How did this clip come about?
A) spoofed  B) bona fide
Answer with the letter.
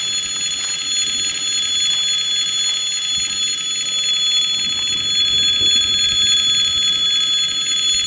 B